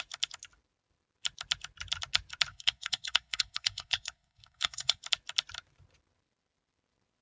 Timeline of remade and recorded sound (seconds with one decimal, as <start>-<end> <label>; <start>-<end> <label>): 0.0-2.5 recorded; 2.5-5.0 remade; 5.0-7.2 recorded